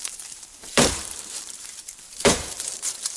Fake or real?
fake